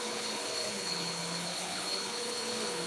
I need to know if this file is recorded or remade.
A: remade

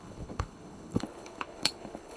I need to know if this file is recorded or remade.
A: remade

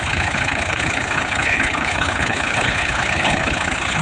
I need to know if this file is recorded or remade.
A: remade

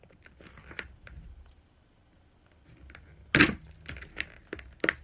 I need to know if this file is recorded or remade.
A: recorded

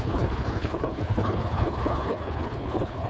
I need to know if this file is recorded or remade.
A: remade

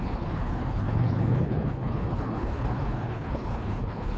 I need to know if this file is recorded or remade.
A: remade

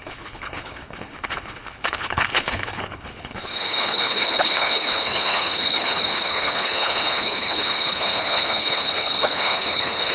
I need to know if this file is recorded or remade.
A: remade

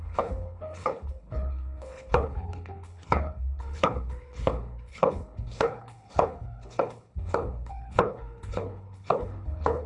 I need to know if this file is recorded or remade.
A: remade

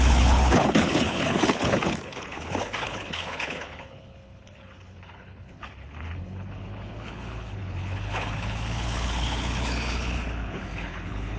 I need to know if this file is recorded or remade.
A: remade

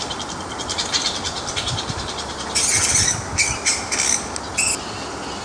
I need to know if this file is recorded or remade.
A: recorded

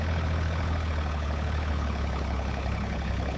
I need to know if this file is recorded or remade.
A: remade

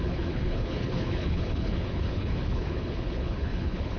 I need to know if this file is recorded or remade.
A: remade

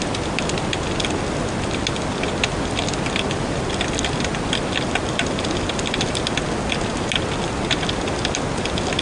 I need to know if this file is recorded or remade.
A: recorded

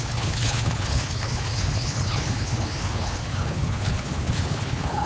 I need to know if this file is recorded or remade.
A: remade